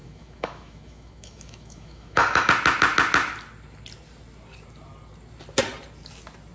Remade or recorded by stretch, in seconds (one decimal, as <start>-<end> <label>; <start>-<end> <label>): 0.0-2.5 remade; 2.5-6.5 recorded